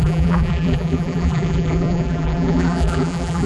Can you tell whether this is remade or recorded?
remade